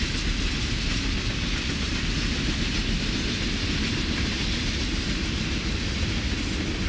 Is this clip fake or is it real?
real